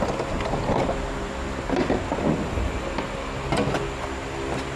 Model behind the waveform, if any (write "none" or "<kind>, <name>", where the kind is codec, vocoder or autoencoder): none